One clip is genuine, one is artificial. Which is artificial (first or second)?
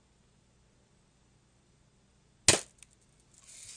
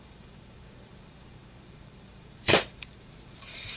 second